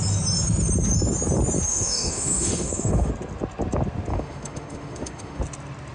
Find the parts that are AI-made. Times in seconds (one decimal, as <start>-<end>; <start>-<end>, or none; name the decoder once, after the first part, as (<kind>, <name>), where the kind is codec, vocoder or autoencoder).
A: 1.7-3.1 (autoencoder, DAC-VAE); 4.1-5.4